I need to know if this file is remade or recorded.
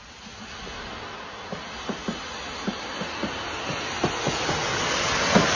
recorded